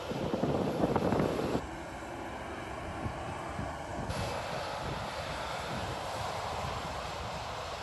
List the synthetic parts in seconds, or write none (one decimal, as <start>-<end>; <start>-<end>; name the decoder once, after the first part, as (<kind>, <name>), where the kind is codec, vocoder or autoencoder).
none